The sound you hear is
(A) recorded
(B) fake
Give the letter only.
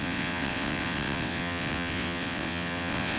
B